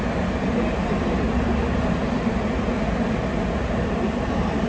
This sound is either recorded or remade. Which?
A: recorded